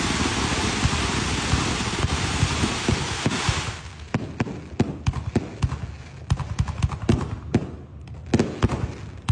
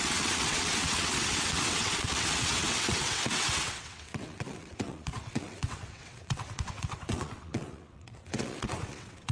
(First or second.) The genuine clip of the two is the first